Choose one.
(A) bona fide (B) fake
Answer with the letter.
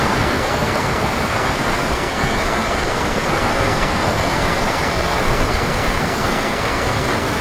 B